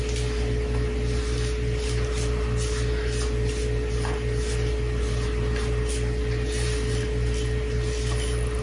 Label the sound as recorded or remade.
recorded